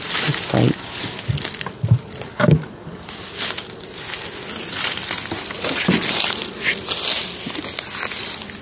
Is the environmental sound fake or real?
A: real